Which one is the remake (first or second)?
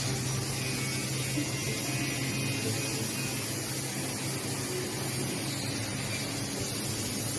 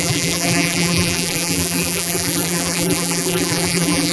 second